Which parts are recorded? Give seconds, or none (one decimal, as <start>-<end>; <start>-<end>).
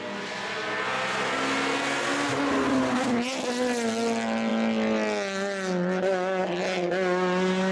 0.0-7.7